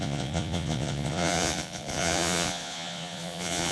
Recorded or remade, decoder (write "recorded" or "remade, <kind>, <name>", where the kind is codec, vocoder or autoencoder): remade, vocoder, Vocos